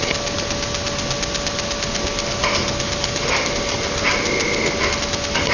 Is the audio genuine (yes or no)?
yes